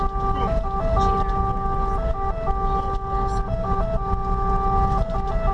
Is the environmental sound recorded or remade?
recorded